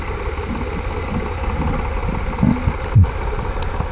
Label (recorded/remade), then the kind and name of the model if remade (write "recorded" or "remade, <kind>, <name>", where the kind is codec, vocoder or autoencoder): recorded